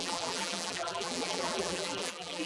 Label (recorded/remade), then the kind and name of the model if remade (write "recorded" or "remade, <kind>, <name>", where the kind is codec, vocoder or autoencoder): remade, vocoder, BigVGAN v2